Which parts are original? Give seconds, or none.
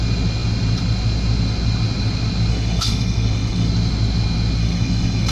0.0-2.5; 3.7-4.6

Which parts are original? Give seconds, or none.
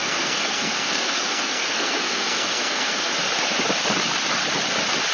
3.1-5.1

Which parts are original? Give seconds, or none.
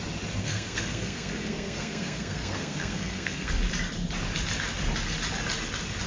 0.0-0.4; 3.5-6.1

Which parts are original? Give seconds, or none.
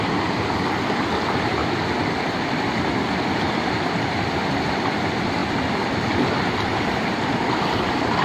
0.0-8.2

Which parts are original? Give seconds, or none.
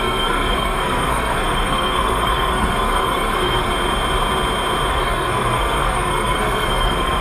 3.7-4.9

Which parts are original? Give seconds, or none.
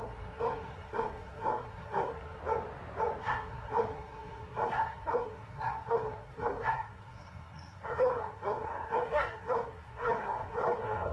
2.4-3.2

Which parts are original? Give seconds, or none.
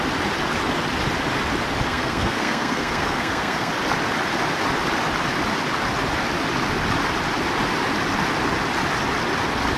0.0-1.9; 3.7-9.8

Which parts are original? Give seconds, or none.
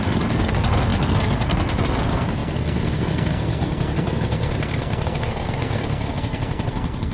none